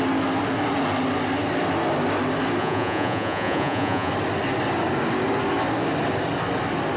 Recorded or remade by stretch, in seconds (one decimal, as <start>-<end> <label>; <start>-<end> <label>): 0.0-2.6 recorded; 2.6-4.1 remade; 4.1-7.0 recorded